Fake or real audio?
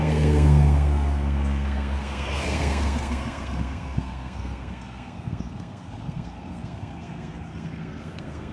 fake